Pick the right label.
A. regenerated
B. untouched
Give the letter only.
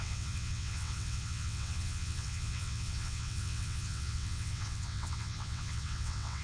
A